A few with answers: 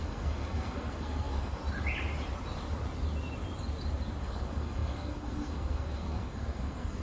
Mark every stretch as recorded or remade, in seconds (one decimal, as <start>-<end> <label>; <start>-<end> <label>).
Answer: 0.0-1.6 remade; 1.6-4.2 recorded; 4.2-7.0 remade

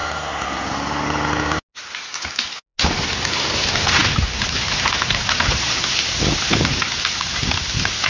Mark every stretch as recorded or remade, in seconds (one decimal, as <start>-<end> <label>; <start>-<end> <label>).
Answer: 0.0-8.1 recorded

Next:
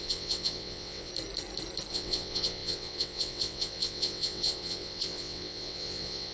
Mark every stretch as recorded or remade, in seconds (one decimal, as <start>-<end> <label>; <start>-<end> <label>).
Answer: 0.0-1.1 remade; 1.1-1.9 recorded; 1.9-6.3 remade

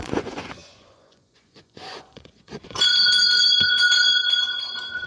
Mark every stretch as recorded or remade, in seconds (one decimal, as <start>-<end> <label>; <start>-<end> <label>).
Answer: 0.0-5.1 remade

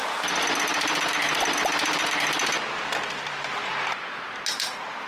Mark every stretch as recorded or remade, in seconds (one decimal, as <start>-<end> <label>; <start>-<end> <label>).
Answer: 0.0-3.7 recorded; 3.7-4.3 remade; 4.3-5.1 recorded